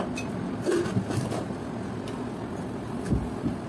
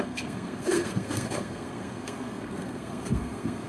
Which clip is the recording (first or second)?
first